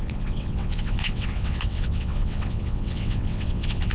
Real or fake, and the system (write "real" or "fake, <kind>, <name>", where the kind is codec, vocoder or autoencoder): fake, vocoder, WaveNeXt